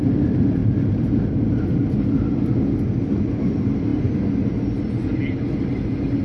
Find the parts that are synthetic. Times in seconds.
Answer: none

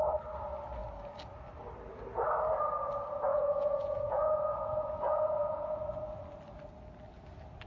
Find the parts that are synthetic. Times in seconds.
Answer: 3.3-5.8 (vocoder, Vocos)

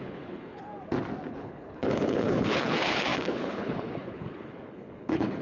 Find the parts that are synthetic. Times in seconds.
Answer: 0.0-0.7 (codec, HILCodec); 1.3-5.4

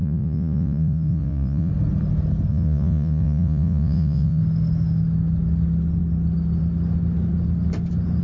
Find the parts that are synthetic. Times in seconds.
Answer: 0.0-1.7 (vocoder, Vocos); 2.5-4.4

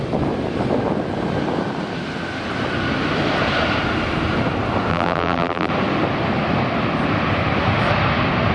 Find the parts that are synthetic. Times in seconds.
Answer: 4.9-5.7 (vocoder, BigVGAN v2)